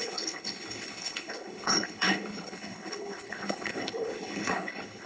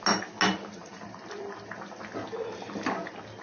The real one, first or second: second